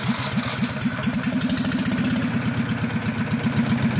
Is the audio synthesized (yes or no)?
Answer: no